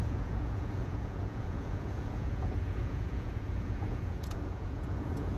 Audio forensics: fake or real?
fake